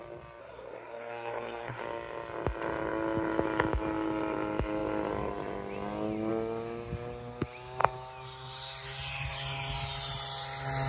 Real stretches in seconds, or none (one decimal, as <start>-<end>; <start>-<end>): 0.0-0.4; 1.8-10.9